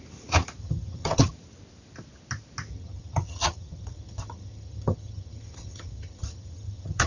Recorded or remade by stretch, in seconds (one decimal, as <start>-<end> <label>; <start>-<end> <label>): 0.0-0.6 recorded; 0.6-1.3 remade; 1.3-2.7 recorded; 2.7-7.1 remade